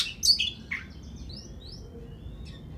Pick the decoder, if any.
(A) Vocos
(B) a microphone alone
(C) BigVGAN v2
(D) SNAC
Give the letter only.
B